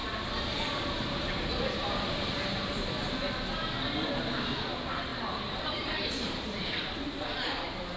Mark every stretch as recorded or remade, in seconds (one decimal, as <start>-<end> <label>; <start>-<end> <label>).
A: 0.0-2.8 remade; 2.8-5.1 recorded; 5.1-7.0 remade; 7.0-8.0 recorded